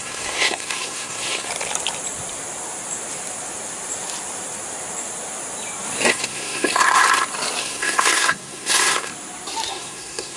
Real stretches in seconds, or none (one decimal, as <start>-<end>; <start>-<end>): 1.5-6.1; 7.0-7.6; 9.1-9.7